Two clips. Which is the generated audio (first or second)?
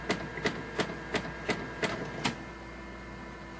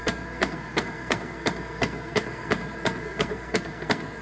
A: second